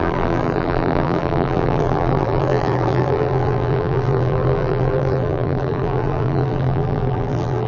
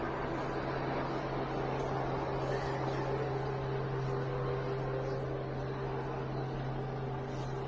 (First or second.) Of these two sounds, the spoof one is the first